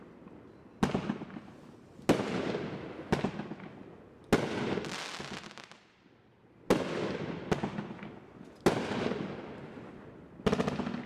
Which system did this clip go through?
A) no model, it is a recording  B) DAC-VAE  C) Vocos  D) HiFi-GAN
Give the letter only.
A